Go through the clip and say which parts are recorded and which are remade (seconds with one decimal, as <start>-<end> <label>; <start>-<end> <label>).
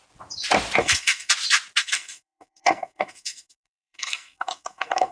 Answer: 0.0-0.8 recorded; 0.8-1.3 remade; 1.3-1.8 recorded; 1.8-5.1 remade